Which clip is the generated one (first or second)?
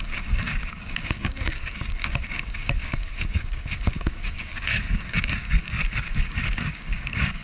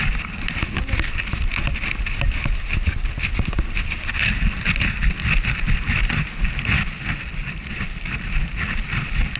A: first